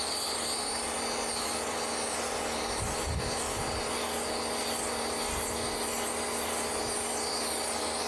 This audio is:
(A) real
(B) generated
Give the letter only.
A